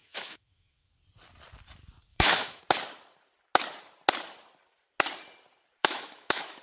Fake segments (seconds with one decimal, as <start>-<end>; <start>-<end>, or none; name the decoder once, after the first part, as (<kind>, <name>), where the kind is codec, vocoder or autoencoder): 0.0-0.9 (autoencoder, DAC-VAE); 2.1-2.6; 5.8-6.6